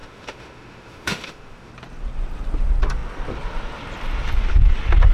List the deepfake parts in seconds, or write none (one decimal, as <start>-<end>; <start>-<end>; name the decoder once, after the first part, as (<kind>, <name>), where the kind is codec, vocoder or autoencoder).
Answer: 0.0-1.7 (autoencoder, DAC-VAE)